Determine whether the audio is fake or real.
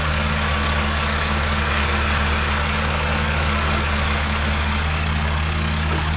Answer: fake